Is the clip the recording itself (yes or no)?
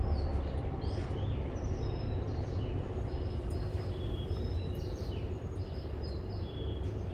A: yes